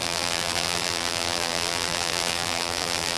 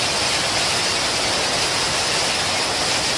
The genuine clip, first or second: second